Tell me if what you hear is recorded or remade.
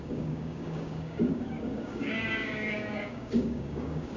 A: remade